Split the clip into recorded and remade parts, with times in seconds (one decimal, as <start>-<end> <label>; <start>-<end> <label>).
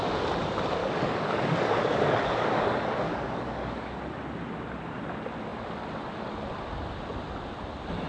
0.0-0.8 recorded; 0.8-4.0 remade; 4.0-8.1 recorded